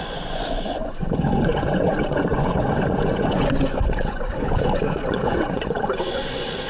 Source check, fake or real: fake